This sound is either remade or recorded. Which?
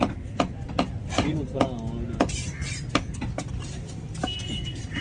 recorded